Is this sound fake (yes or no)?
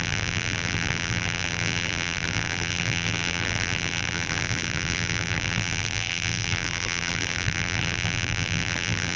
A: yes